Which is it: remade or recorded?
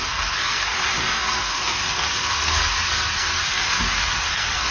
remade